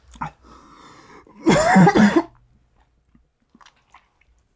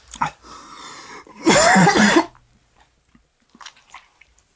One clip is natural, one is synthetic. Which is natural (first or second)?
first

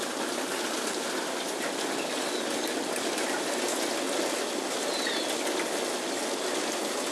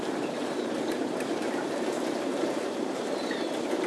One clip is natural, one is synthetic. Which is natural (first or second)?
first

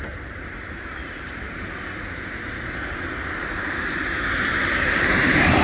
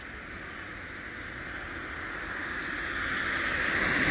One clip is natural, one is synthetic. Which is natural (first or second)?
second